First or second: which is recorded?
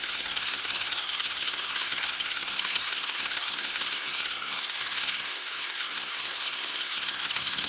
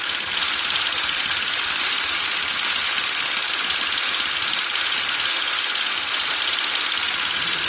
second